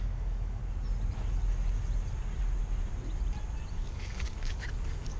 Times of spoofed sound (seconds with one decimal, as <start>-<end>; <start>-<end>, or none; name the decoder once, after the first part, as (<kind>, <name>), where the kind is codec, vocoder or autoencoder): 0.0-0.6 (codec, DAC); 3.7-5.2